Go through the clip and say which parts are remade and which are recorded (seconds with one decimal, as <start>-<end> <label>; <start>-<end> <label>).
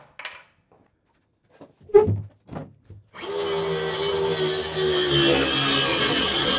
0.0-5.9 recorded; 5.9-6.6 remade